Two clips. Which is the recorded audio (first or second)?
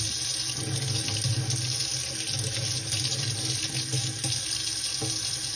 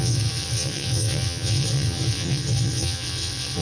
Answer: first